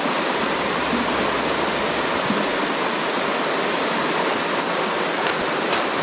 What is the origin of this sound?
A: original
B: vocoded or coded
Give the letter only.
A